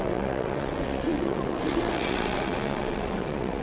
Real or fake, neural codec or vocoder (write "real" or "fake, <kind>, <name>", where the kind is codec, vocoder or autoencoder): fake, vocoder, WaveNeXt